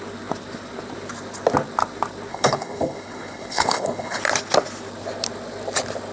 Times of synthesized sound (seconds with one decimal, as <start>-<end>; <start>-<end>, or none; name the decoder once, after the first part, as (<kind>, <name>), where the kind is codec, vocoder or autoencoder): 2.3-4.2 (codec, HILCodec)